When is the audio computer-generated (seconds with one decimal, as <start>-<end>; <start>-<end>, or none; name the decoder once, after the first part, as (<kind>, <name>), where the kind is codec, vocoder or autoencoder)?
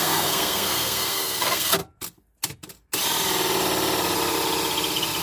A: 0.0-1.8 (codec, SNAC)